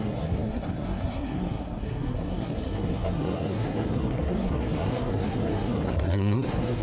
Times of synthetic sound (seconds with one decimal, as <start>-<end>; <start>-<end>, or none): 0.0-6.8